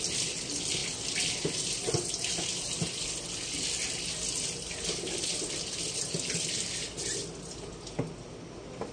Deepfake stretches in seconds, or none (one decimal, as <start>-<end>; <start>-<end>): none